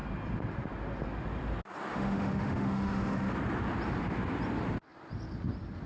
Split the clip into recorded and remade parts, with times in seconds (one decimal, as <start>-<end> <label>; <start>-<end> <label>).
0.0-1.9 recorded; 1.9-3.3 remade; 3.3-5.9 recorded